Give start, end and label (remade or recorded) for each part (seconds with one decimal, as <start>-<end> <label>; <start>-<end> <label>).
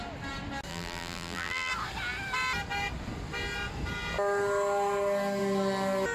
0.0-0.7 recorded; 0.7-1.7 remade; 1.7-6.1 recorded